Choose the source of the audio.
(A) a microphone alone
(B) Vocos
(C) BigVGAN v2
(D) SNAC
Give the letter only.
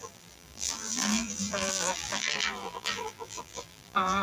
C